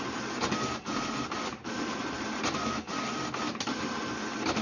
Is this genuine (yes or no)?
yes